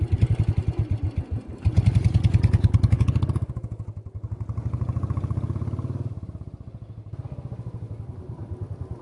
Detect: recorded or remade recorded